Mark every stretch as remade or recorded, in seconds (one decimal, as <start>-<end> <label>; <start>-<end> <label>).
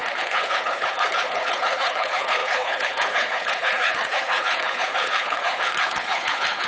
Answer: 0.0-6.7 remade